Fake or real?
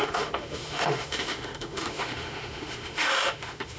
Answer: fake